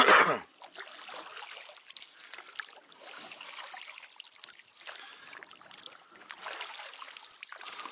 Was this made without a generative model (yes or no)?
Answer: yes